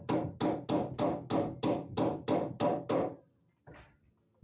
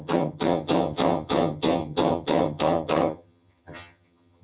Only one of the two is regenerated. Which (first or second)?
second